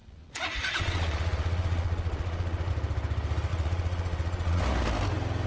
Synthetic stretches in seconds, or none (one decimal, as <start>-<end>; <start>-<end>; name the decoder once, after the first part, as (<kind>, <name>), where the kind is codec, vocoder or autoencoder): 0.0-2.7 (vocoder, Vocos); 3.5-4.6